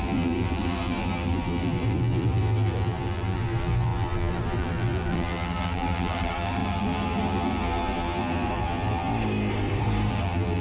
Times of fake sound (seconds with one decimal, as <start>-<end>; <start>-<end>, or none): 0.0-9.1; 10.1-10.6